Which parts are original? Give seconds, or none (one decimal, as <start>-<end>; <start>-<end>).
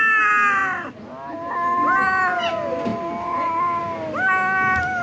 0.0-5.0